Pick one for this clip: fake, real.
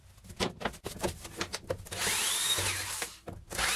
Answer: real